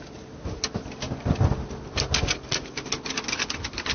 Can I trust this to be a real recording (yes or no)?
yes